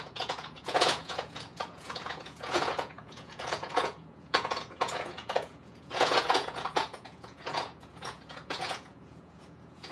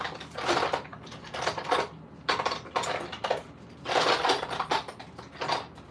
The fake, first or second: first